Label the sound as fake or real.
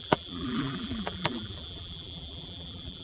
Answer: fake